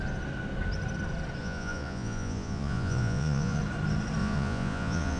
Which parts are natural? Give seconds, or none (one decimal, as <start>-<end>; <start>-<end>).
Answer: 0.0-1.4; 3.6-4.2